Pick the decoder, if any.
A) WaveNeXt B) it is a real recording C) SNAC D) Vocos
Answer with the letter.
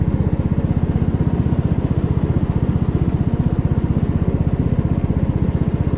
B